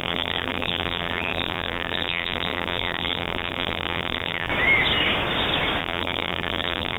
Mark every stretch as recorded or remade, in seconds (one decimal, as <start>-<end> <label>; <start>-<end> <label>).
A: 0.0-4.5 remade; 4.5-5.8 recorded; 5.8-7.0 remade

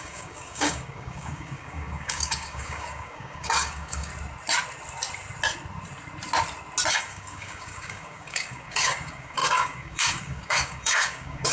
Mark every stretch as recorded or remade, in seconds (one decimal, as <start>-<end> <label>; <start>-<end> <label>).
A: 0.0-4.1 remade; 4.1-6.9 recorded; 6.9-11.5 remade

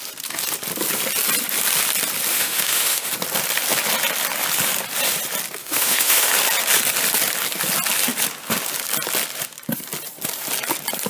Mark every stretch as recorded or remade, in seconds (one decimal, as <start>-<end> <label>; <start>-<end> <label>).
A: 0.0-2.3 recorded; 2.3-3.1 remade; 3.1-5.6 recorded; 5.6-6.3 remade; 6.3-11.1 recorded

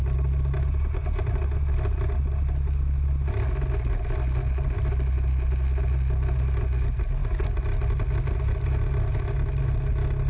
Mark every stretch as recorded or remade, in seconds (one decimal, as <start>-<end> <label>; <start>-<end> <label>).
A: 0.0-10.3 recorded

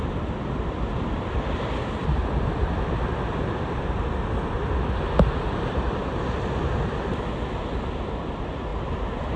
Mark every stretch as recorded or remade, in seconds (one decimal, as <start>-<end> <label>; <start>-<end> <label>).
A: 0.0-8.7 recorded; 8.7-9.4 remade

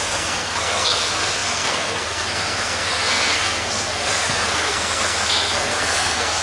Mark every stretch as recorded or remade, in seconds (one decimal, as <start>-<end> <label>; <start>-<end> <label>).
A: 0.0-6.4 remade

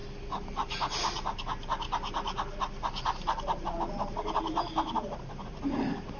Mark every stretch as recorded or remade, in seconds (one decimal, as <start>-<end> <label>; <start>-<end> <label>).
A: 0.0-6.2 recorded

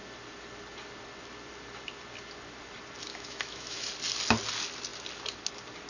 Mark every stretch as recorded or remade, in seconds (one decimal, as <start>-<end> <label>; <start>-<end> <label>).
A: 0.0-3.1 recorded; 3.1-3.9 remade; 3.9-5.9 recorded